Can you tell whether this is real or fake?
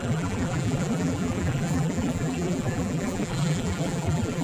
fake